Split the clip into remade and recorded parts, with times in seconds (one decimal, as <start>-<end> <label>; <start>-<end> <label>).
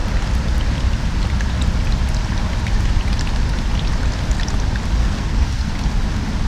0.0-5.0 recorded; 5.0-5.7 remade; 5.7-6.5 recorded